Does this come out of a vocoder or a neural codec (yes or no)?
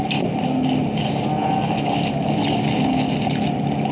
no